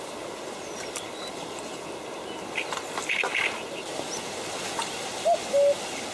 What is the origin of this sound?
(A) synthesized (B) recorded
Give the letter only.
B